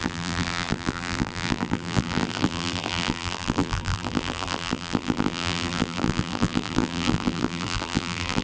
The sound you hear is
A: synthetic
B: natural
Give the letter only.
A